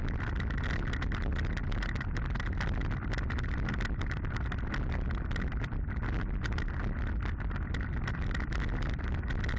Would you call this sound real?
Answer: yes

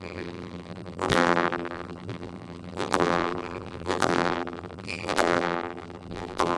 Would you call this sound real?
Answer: no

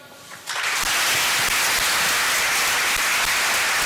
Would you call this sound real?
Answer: yes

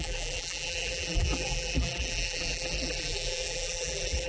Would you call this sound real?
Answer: no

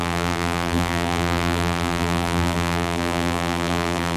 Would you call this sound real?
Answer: no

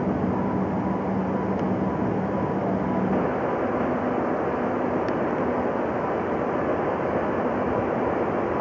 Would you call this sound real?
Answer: yes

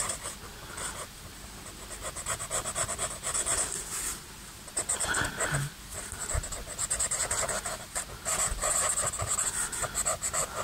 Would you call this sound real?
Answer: yes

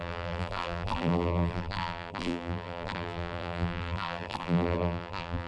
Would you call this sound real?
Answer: no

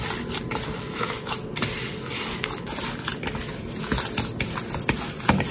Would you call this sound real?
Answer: yes